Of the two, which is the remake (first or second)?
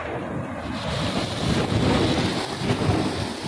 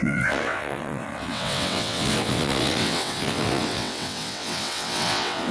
second